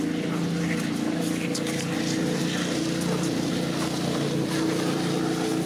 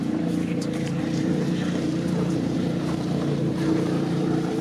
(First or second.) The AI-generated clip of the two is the second